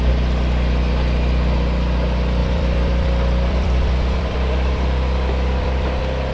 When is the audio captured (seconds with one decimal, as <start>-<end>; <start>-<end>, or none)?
0.0-2.4